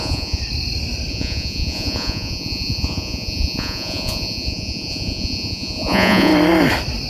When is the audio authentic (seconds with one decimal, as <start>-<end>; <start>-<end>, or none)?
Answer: 0.4-1.1; 6.3-7.1